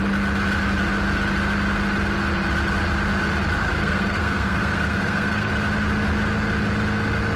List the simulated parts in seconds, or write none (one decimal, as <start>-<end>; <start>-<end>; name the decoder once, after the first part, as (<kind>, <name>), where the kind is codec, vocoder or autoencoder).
3.6-5.5 (codec, SNAC)